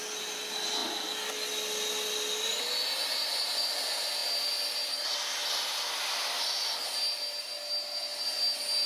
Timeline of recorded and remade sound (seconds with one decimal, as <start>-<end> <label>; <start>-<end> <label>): 0.0-8.9 recorded